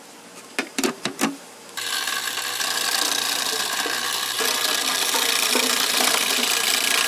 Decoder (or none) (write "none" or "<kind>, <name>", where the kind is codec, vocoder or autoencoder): vocoder, BigVGAN v2